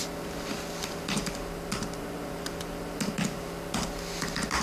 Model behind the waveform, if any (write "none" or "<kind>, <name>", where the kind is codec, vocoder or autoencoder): none